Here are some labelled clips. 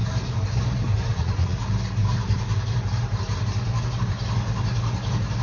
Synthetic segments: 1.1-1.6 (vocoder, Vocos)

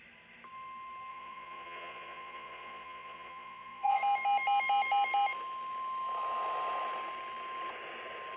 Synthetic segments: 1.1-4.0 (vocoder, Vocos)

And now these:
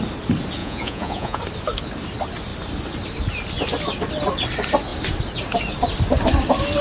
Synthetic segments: 0.6-1.4 (vocoder, Vocos)